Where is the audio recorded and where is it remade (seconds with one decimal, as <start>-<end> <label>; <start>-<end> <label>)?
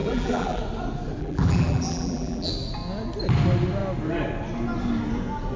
0.0-0.6 remade; 0.6-1.2 recorded; 1.2-2.5 remade; 2.5-5.6 recorded